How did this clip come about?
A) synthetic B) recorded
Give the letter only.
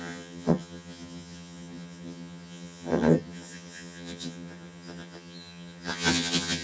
A